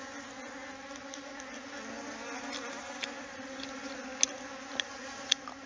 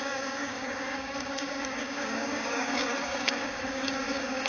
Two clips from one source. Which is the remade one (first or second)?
second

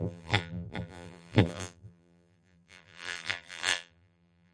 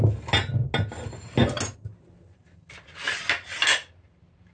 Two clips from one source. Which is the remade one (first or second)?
first